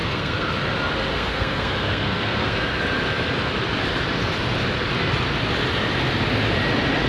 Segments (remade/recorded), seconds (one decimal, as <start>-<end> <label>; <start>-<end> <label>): 0.0-0.5 remade; 0.5-1.1 recorded; 1.1-2.8 remade; 2.8-7.1 recorded